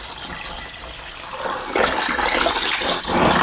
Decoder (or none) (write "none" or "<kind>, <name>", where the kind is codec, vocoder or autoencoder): vocoder, BigVGAN v2